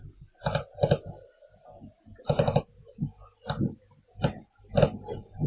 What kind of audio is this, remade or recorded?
recorded